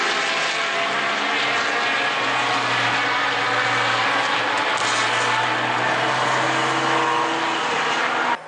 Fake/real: real